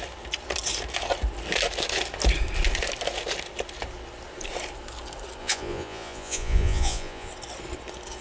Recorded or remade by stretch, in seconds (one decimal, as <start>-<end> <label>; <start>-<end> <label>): 0.0-5.4 recorded; 5.4-7.3 remade; 7.3-8.2 recorded

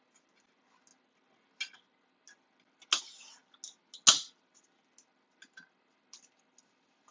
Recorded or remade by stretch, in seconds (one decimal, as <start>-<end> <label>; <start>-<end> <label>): 0.0-7.1 recorded

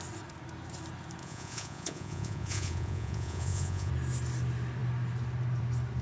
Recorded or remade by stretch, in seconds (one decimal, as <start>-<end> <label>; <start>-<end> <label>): 0.0-1.2 recorded; 1.2-3.9 remade; 3.9-6.0 recorded